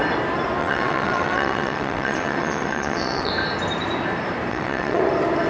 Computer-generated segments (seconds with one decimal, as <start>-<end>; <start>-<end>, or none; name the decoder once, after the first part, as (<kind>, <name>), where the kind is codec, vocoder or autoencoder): 0.6-3.3 (vocoder, WaveNeXt); 4.5-5.0